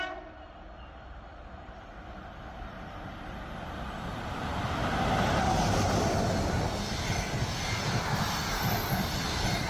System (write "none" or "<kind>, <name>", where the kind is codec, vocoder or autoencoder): vocoder, BigVGAN v2